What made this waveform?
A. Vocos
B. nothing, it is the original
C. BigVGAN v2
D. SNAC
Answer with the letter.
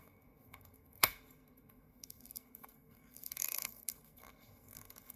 D